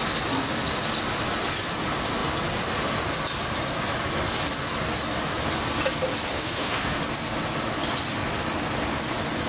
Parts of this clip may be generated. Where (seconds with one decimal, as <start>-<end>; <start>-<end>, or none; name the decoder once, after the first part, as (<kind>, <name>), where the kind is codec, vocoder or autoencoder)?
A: 6.3-7.0 (autoencoder, DAC-VAE)